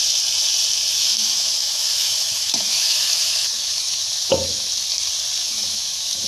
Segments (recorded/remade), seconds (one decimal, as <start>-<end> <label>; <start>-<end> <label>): 0.0-0.9 recorded; 0.9-4.7 remade; 4.7-5.4 recorded; 5.4-6.3 remade